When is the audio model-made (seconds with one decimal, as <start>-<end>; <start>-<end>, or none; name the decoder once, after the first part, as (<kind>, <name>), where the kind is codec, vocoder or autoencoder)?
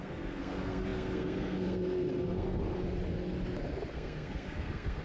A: 0.0-2.6 (codec, SNAC); 3.9-5.0